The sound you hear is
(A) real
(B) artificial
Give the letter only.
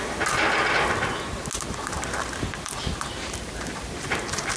A